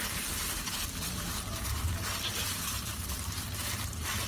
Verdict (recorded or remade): remade